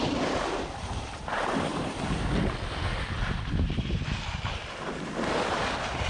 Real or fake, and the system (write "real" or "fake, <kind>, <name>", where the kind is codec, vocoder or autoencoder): real